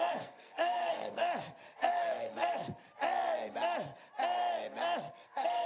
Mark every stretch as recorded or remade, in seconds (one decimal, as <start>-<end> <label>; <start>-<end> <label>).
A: 0.0-1.2 remade; 1.2-1.9 recorded; 1.9-2.6 remade; 2.6-5.1 recorded; 5.1-5.7 remade